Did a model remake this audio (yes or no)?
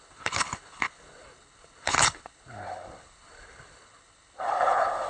yes